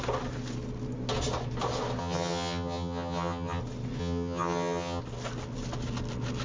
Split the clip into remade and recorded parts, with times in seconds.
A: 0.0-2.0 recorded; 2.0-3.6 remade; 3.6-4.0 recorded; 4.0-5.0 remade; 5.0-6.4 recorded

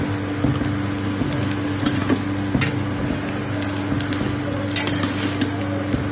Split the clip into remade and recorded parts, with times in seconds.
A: 0.0-6.1 recorded

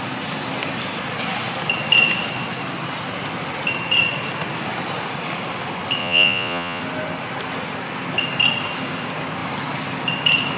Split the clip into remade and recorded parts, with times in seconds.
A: 0.0-6.0 recorded; 6.0-6.8 remade; 6.8-10.6 recorded